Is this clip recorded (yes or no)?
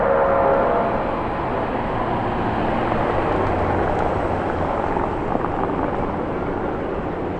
yes